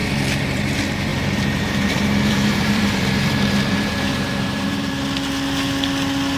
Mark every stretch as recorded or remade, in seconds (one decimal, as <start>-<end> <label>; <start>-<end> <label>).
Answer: 0.0-0.6 remade; 0.6-1.1 recorded; 1.1-4.9 remade; 4.9-6.4 recorded